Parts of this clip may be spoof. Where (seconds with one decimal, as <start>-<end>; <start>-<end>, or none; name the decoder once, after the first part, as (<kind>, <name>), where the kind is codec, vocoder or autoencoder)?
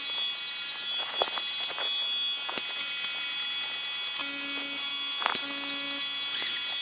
none